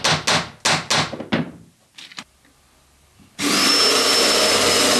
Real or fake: real